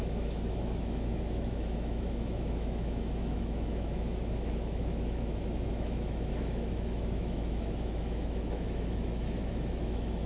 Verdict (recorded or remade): remade